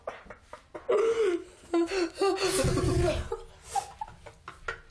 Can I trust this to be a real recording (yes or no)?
yes